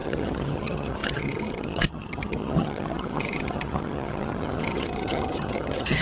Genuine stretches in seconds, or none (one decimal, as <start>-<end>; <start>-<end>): none